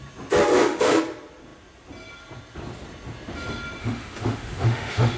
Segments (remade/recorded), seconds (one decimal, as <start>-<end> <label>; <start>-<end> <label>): 0.0-0.5 recorded; 0.5-1.0 remade; 1.0-3.8 recorded; 3.8-5.2 remade